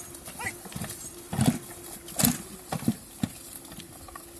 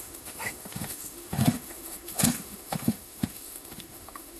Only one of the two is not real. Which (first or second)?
second